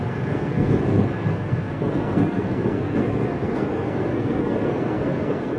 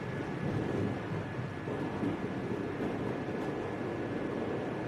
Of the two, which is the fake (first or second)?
first